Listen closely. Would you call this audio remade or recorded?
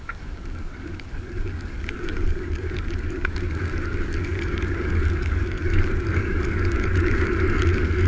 remade